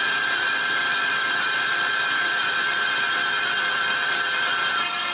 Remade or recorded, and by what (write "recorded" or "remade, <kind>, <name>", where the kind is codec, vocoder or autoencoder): recorded